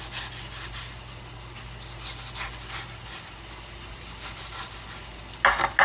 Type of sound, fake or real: real